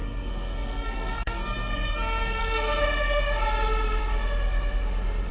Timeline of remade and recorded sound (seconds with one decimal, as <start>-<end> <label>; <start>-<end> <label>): 0.0-3.2 remade; 3.2-5.3 recorded